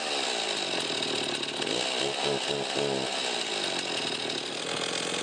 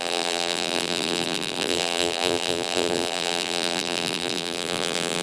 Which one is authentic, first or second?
first